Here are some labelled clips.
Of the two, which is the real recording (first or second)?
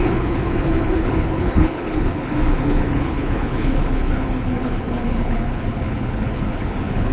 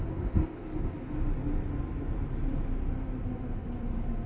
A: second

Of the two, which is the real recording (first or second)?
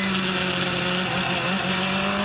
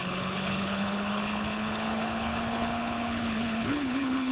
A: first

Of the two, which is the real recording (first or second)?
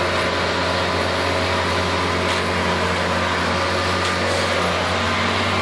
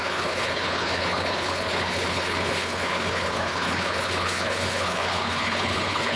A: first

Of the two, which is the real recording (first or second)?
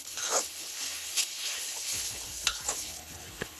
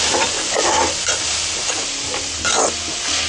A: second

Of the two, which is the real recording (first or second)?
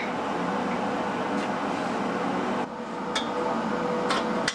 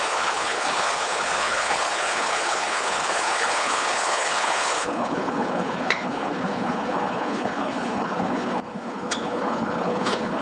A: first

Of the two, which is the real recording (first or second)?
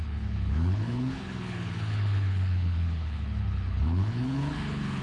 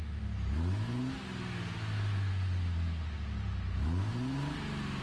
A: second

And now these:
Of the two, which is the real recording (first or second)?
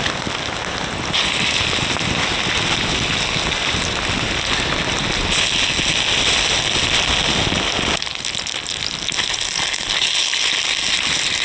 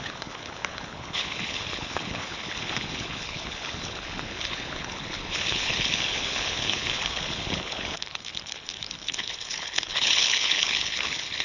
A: first